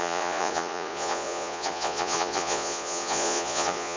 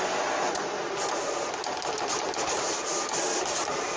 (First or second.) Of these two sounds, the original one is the second